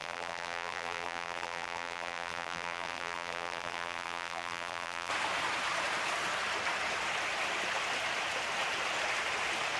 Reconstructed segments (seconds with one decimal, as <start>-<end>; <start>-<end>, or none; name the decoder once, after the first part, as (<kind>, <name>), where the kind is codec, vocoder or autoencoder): 0.0-5.1 (vocoder, BigVGAN v2)